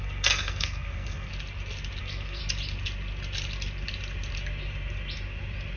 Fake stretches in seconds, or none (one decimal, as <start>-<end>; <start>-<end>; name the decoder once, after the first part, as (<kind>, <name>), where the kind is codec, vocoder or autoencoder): 0.0-1.3 (codec, SNAC); 2.0-2.4